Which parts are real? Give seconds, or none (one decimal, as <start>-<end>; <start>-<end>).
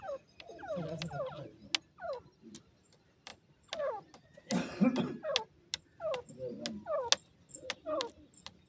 0.0-8.7